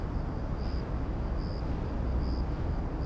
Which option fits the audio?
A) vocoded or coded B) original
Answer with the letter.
B